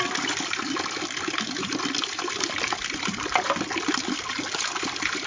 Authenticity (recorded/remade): recorded